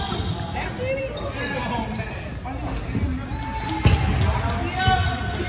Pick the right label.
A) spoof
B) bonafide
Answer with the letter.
B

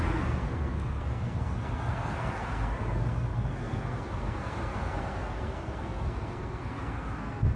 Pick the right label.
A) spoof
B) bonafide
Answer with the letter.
A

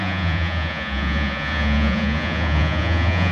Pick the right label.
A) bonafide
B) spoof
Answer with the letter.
B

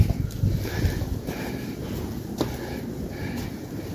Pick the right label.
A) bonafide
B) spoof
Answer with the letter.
A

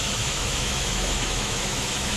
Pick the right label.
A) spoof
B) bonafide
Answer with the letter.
A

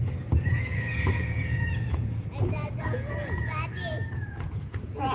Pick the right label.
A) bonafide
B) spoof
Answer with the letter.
B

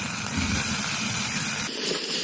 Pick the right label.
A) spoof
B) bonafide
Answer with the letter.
A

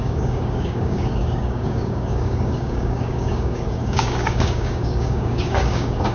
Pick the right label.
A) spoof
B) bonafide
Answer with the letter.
A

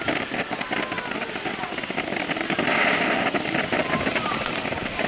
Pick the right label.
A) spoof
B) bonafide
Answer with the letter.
B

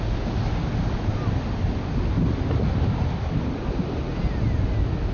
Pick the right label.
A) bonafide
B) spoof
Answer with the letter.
A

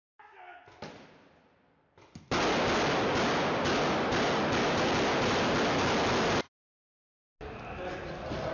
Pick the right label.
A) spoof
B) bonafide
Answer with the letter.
B